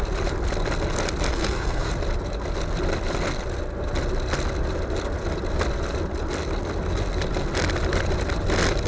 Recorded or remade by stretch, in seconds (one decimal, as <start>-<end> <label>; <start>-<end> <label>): 0.0-1.3 recorded; 1.3-1.9 remade; 1.9-8.9 recorded